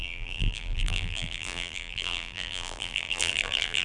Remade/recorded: remade